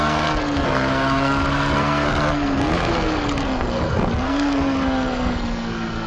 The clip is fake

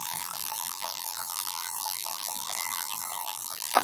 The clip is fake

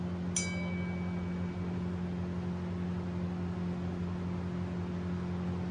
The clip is real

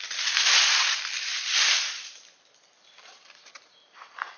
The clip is fake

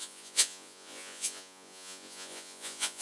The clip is fake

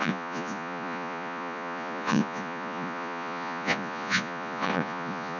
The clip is fake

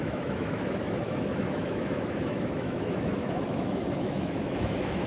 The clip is fake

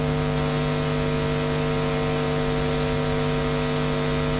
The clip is real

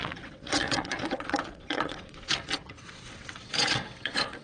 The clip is fake